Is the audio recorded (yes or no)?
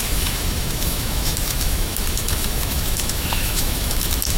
no